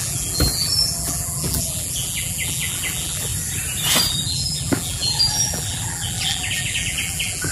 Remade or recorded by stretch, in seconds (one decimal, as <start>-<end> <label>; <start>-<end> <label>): 0.0-3.3 remade; 3.3-4.1 recorded; 4.1-7.5 remade